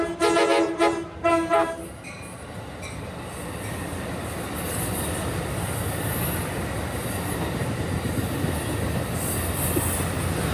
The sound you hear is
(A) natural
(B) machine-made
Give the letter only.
A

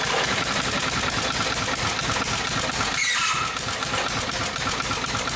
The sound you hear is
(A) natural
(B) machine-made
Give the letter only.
A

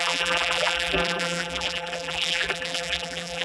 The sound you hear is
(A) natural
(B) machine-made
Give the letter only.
B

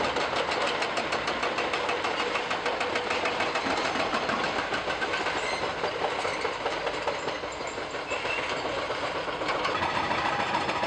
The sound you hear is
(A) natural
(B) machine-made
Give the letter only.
A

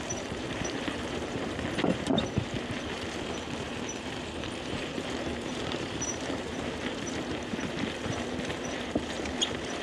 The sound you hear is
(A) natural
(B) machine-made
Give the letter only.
B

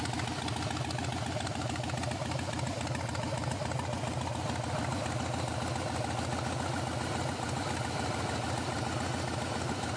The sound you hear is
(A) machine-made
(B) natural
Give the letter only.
B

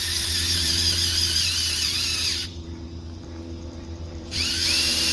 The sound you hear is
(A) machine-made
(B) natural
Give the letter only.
A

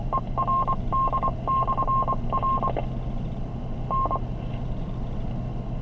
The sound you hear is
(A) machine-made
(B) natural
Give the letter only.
B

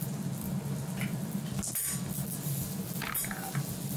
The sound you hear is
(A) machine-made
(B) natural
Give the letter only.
B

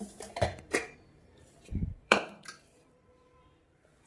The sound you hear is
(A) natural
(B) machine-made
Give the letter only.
B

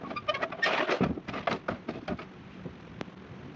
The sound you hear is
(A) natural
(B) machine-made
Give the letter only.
A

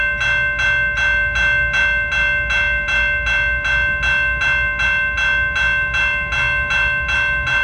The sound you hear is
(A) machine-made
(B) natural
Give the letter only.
B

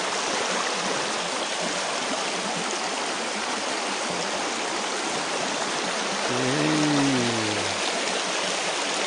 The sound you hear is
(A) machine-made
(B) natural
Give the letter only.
B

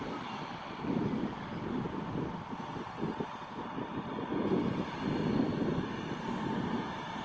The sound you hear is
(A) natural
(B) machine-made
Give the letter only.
A